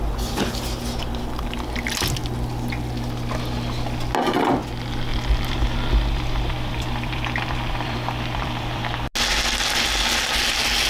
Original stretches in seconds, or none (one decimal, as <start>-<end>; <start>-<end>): 0.0-5.1; 8.8-10.9